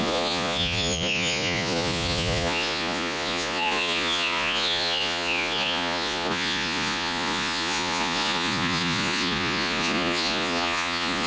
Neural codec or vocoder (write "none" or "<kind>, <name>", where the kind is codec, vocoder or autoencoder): vocoder, Vocos